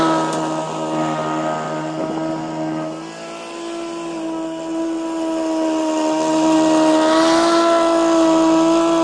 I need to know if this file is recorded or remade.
recorded